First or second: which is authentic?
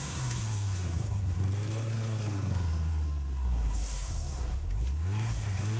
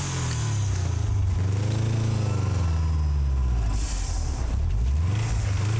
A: second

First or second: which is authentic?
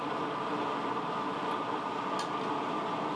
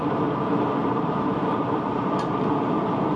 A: first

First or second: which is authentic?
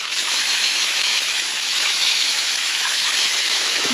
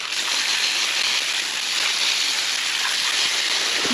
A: second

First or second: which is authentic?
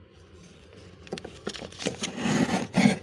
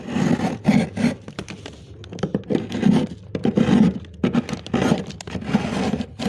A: second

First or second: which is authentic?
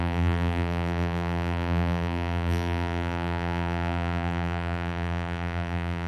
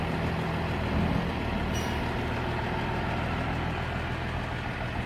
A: second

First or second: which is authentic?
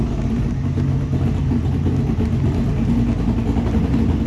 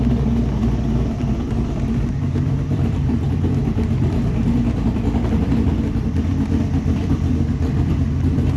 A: first